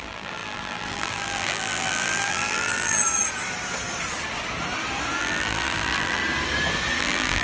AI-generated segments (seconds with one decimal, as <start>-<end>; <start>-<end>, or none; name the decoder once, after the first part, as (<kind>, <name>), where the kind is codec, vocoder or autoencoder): 0.0-3.0 (vocoder, BigVGAN v2); 5.2-6.2; 7.0-7.4